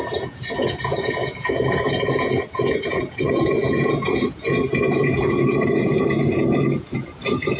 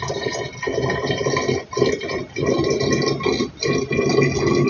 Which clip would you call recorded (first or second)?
second